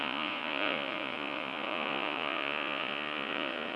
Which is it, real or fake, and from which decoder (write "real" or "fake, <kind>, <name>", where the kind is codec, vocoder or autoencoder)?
fake, vocoder, Vocos